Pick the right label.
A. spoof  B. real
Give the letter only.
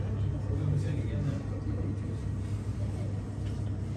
B